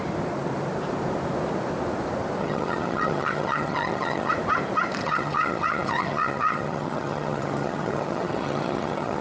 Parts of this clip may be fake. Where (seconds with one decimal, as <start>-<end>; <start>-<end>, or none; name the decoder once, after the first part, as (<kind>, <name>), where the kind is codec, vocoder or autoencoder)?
2.4-4.3 (vocoder, HiFi-GAN); 5.0-9.2